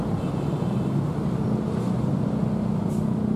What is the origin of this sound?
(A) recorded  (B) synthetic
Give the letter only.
A